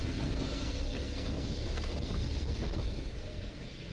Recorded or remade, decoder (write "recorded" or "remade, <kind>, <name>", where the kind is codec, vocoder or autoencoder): remade, codec, SNAC